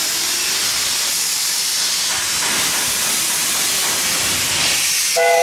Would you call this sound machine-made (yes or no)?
no